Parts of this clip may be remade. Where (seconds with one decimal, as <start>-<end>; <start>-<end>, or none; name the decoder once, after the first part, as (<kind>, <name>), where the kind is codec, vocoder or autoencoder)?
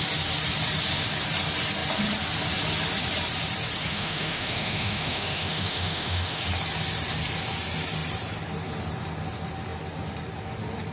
3.9-6.4 (autoencoder, DAC-VAE)